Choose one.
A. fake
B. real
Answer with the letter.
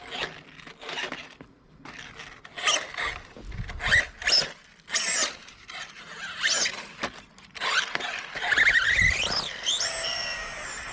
B